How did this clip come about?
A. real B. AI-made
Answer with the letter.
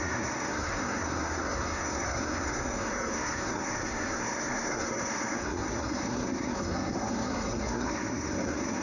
B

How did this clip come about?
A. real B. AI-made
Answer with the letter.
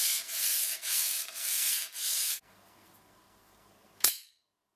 B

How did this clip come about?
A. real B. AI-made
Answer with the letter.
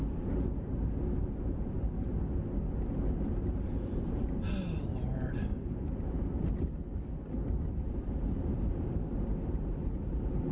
A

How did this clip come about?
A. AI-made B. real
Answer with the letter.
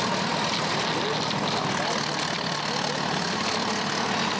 B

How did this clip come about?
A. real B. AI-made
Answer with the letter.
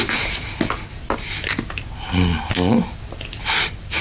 A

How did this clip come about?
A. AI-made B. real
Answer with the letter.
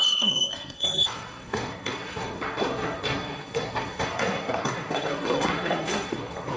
A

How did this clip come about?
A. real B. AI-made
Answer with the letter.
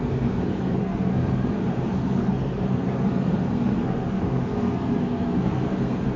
B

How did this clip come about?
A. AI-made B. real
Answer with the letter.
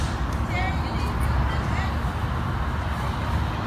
B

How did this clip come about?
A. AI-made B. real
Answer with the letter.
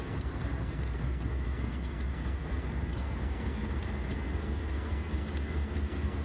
A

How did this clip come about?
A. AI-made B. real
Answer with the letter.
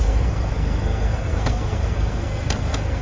A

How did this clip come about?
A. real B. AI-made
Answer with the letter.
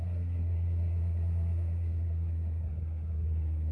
B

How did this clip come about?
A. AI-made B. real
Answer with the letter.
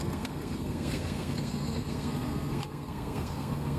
A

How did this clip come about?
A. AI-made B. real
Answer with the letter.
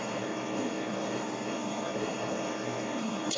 A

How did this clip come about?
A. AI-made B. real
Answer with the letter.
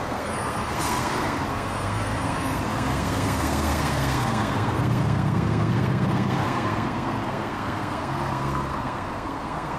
A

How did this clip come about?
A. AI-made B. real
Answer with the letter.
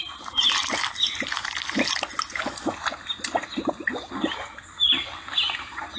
B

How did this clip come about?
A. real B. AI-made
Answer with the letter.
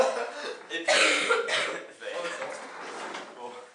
A